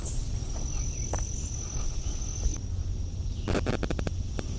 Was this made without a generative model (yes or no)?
no